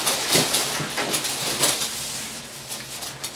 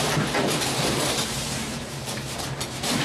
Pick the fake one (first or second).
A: second